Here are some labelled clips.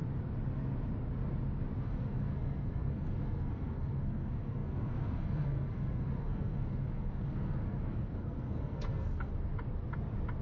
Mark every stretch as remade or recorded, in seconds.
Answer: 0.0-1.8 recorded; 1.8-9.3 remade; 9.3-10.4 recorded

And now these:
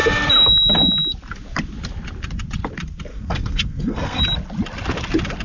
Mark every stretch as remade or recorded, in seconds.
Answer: 0.0-3.1 recorded; 3.1-4.2 remade; 4.2-5.4 recorded

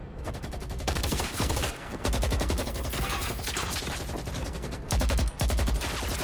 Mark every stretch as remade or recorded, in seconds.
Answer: 0.0-3.7 remade; 3.7-4.4 recorded; 4.4-5.7 remade; 5.7-6.2 recorded

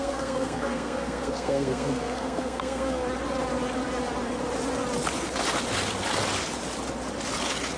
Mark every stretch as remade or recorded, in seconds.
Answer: 0.0-3.0 remade; 3.0-7.8 recorded

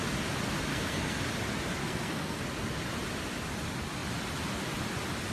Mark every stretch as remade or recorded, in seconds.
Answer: 0.0-0.7 recorded; 0.7-1.2 remade; 1.2-1.8 recorded; 1.8-2.4 remade; 2.4-5.3 recorded

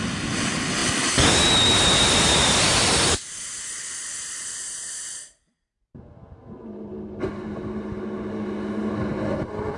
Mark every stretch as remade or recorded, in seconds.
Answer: 0.0-9.8 recorded